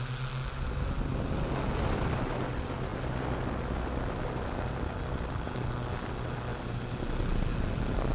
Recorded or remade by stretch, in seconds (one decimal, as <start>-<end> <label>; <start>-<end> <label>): 0.0-8.1 recorded